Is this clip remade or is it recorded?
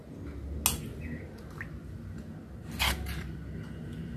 recorded